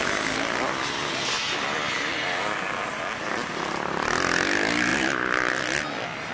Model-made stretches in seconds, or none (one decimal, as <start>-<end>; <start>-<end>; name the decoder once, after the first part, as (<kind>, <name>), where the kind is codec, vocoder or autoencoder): none